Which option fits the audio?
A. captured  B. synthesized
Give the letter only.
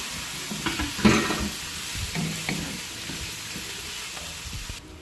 A